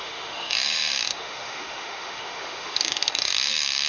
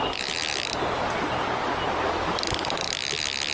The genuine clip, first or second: second